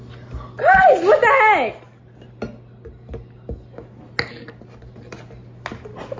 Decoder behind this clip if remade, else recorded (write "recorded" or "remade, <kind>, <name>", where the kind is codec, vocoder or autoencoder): recorded